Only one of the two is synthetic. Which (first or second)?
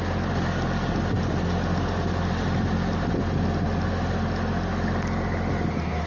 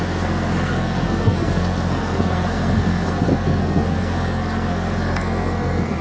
second